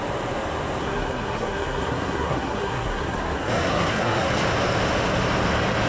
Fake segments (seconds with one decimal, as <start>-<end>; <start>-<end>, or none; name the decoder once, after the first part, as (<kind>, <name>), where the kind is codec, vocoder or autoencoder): 0.8-4.3 (codec, SNAC)